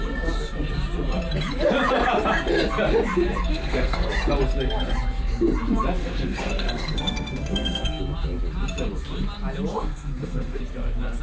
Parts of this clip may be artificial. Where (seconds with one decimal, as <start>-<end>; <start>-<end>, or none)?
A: 3.5-4.1; 6.0-8.0; 9.7-10.6